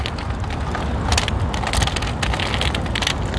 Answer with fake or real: real